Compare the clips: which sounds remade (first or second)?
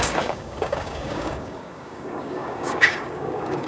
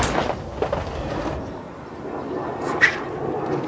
first